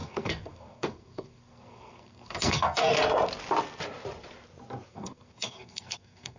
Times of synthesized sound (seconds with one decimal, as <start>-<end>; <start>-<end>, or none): 0.0-3.0; 4.9-6.4